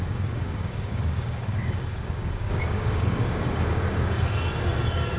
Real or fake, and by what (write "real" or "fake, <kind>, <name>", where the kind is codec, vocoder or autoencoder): fake, codec, DAC